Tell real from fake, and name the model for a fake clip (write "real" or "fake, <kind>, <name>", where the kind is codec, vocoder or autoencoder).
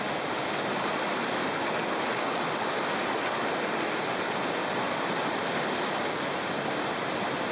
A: real